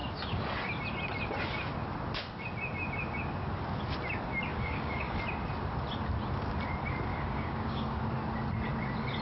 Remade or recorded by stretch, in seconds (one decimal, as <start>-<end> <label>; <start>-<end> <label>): 0.0-4.5 recorded; 4.5-5.2 remade; 5.2-7.1 recorded; 7.1-8.0 remade; 8.0-9.2 recorded